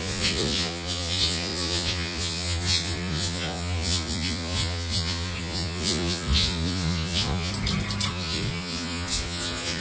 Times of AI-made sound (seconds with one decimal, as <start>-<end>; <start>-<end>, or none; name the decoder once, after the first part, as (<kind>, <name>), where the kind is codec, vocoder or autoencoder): 0.0-7.5 (vocoder, Vocos); 8.1-9.8